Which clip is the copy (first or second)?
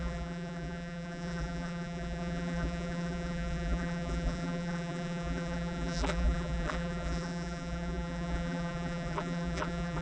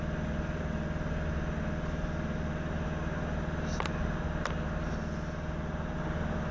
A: first